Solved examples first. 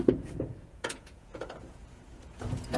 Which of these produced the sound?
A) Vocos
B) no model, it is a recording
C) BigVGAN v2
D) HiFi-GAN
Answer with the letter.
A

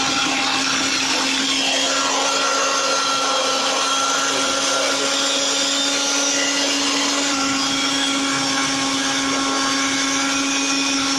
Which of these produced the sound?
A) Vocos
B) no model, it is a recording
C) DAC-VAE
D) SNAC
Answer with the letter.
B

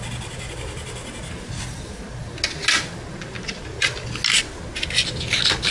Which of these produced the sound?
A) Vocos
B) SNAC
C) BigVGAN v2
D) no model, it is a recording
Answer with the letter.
D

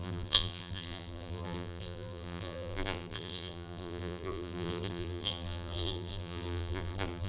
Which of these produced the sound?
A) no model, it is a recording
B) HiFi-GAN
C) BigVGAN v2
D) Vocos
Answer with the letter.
C